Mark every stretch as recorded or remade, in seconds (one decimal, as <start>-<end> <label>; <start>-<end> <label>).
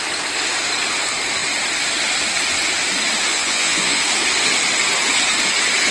0.0-3.3 recorded; 3.3-4.0 remade; 4.0-5.9 recorded